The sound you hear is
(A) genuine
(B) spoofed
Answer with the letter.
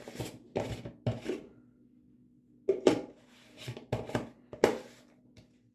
A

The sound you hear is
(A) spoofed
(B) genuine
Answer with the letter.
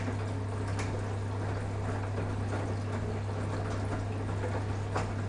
B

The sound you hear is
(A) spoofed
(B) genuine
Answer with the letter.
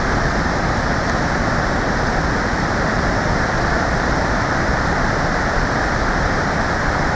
A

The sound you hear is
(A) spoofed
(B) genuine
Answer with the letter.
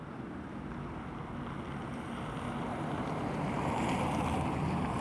B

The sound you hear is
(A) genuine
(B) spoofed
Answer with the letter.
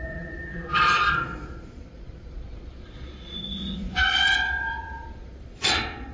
B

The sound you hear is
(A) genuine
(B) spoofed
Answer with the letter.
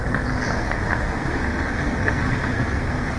B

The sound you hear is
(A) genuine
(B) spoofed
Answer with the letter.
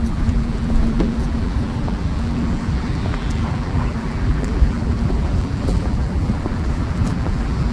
B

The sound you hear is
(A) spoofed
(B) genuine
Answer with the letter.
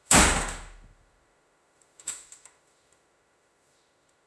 A